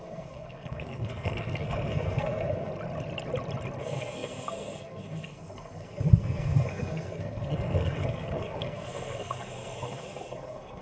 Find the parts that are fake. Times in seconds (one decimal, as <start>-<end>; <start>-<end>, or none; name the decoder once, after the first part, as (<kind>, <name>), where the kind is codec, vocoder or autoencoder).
0.0-2.7 (codec, SNAC); 3.8-10.8